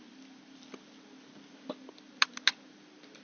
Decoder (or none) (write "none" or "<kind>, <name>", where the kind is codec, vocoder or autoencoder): none